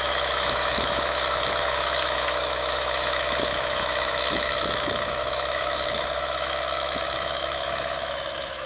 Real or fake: fake